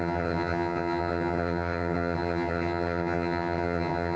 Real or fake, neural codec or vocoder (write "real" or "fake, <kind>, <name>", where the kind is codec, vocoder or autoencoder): fake, vocoder, HiFi-GAN